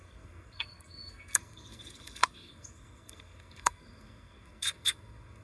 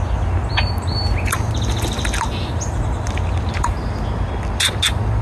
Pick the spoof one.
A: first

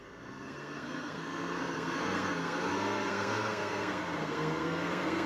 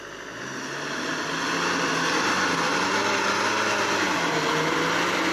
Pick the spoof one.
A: first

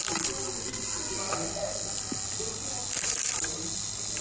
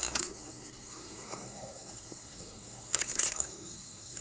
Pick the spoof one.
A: second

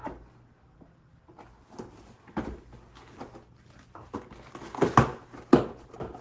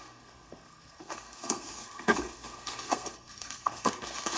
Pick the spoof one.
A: second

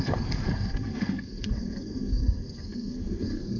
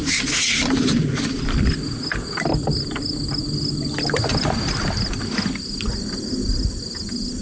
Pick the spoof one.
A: first